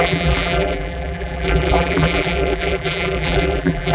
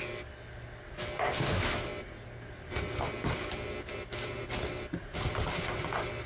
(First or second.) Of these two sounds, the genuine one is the second